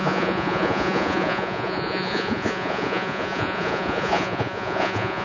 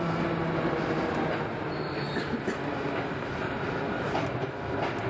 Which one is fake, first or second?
first